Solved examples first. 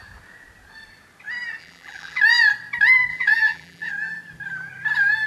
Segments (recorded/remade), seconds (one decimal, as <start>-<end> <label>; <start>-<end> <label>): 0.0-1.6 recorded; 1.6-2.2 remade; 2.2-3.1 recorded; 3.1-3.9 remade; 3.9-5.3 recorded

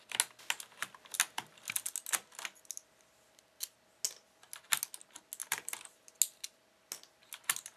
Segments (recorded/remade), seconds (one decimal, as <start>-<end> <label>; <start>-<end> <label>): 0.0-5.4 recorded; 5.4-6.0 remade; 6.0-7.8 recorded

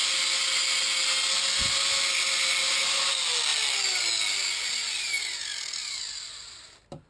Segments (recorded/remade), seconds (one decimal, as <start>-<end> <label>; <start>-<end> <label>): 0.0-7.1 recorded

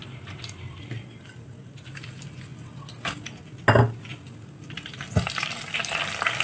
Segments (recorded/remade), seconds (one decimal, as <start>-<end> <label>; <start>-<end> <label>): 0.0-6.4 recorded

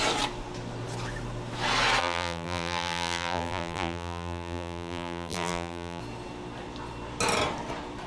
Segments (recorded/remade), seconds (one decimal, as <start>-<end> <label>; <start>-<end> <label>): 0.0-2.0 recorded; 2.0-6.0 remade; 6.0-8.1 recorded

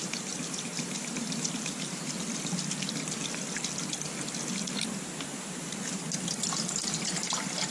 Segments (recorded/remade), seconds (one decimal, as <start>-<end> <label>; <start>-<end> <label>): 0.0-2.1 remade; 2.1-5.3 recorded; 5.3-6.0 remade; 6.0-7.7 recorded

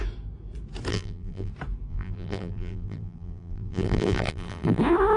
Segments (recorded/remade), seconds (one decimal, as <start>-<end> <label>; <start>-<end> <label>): 0.0-0.9 recorded; 0.9-1.5 remade; 1.5-1.9 recorded; 1.9-4.8 remade; 4.8-5.2 recorded